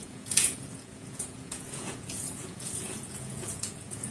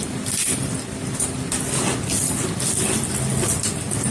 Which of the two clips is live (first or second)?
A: second